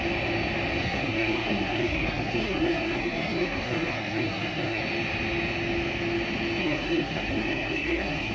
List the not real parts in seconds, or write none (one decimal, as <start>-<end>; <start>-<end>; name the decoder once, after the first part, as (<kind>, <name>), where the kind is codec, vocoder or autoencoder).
0.8-4.8 (codec, SNAC); 6.6-8.3